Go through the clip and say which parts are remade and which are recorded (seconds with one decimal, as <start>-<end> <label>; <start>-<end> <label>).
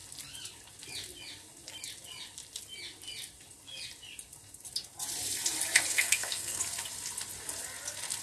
0.0-5.9 recorded; 5.9-6.6 remade; 6.6-8.2 recorded